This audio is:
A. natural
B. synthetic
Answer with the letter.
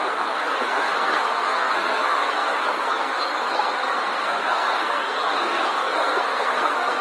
B